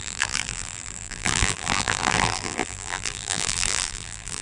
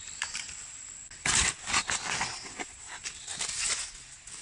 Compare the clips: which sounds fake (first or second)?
first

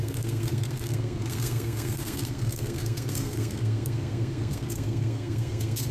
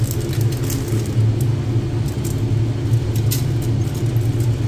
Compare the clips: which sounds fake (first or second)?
first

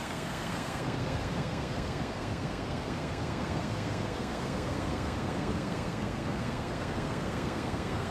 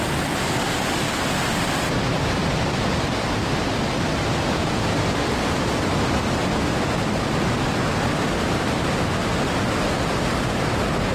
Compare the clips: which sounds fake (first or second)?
first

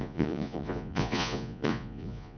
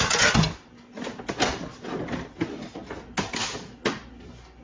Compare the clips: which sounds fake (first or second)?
first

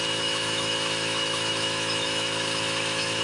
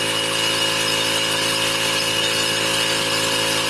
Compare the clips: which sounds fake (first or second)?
first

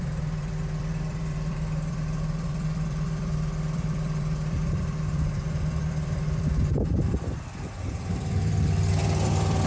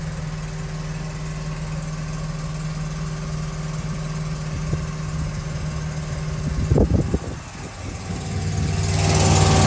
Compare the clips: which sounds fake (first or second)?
first